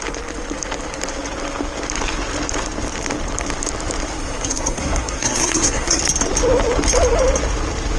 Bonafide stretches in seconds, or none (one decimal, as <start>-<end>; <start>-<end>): 0.0-4.2; 6.0-8.0